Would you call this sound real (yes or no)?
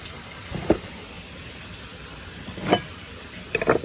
yes